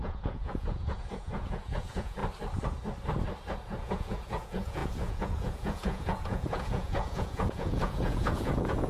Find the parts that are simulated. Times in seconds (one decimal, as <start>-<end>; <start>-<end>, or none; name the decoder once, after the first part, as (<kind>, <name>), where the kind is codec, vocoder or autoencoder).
0.0-2.2 (vocoder, Vocos); 3.8-8.9